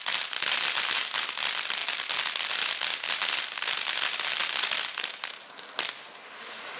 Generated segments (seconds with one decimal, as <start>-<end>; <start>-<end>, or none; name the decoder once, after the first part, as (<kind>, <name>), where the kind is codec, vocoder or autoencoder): none